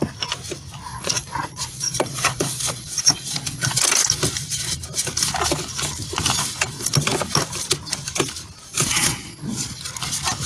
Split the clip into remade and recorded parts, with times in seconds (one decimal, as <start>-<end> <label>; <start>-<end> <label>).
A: 0.0-0.9 recorded; 0.9-3.8 remade; 3.8-8.7 recorded; 8.7-9.8 remade; 9.8-10.5 recorded